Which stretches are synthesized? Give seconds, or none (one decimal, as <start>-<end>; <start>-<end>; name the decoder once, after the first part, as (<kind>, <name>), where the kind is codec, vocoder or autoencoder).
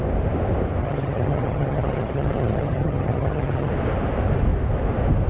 0.8-3.7 (vocoder, HiFi-GAN)